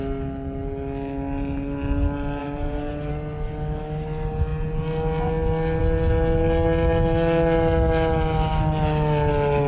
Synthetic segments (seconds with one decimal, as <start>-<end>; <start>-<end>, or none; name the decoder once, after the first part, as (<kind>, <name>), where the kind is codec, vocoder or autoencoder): 2.4-3.1 (vocoder, BigVGAN v2)